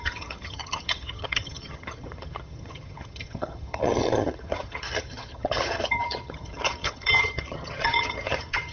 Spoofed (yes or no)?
yes